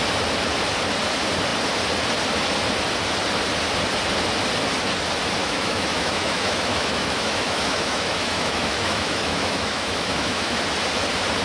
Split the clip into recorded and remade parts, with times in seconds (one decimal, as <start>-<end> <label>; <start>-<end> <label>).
0.0-5.4 recorded; 5.4-10.6 remade; 10.6-11.4 recorded